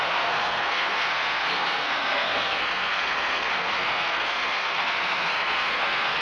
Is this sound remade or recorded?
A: remade